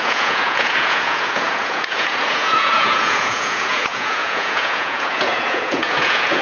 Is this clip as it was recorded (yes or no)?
no